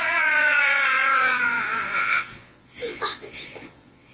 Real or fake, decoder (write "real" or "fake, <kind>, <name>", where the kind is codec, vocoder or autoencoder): fake, vocoder, Vocos